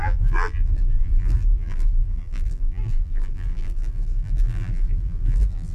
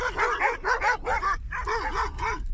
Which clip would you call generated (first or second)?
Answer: first